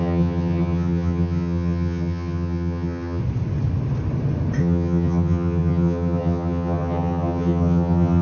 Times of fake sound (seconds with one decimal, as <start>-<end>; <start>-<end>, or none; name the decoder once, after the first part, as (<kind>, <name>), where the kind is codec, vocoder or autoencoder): 0.0-3.2 (vocoder, HiFi-GAN); 4.6-8.2